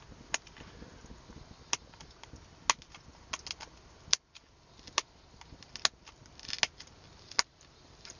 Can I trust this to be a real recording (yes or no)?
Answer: yes